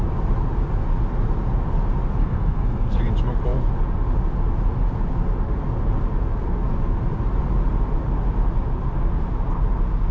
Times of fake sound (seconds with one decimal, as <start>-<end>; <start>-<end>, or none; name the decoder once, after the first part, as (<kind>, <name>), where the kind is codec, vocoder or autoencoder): 2.2-3.0 (codec, SNAC)